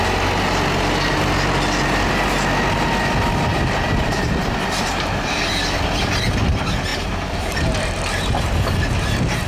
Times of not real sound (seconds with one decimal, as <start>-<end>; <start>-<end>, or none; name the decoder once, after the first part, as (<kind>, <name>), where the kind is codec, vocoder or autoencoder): 3.5-5.5 (vocoder, BigVGAN v2); 6.9-9.5

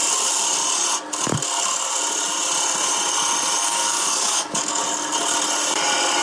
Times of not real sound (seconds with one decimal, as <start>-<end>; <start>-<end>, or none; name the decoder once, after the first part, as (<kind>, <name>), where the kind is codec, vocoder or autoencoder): 3.6-4.8 (codec, DAC)

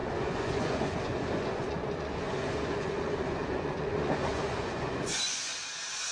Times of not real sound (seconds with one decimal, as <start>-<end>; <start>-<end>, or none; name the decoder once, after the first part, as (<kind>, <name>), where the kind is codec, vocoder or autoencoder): 0.0-5.5 (vocoder, Vocos)

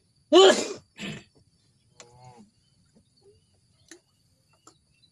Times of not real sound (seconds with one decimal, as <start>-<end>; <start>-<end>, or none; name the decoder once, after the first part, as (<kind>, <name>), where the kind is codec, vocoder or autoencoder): none

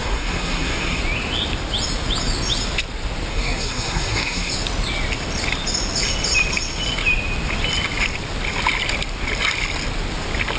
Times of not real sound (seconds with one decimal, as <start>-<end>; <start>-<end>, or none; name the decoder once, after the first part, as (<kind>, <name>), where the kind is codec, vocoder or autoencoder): 0.0-1.0 (codec, SNAC); 3.3-4.5